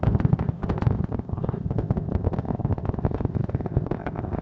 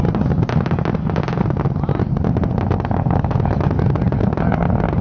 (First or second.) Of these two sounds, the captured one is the second